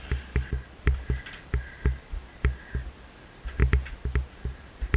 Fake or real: real